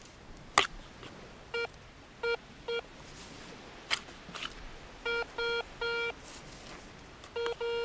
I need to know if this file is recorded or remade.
recorded